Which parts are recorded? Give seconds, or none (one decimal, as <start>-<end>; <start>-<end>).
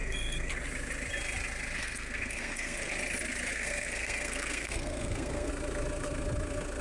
0.5-1.8; 2.9-3.5; 5.5-6.8